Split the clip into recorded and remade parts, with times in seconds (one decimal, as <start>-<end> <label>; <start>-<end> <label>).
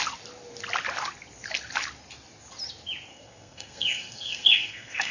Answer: 0.0-3.1 recorded; 3.1-5.1 remade